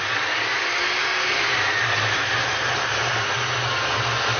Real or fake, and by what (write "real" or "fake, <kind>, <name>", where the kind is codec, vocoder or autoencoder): real